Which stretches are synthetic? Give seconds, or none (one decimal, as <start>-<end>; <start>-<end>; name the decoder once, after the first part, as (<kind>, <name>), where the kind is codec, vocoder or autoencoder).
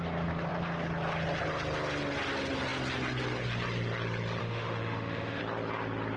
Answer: 4.4-5.4 (autoencoder, DAC-VAE)